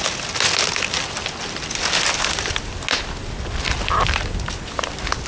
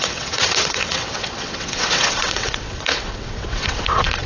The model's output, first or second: second